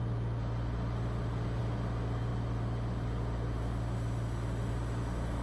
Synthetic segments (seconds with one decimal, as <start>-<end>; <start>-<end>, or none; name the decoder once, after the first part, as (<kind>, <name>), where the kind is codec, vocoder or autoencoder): none